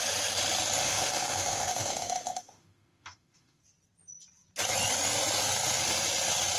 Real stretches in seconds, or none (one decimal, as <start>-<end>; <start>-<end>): 0.0-0.8; 3.6-6.6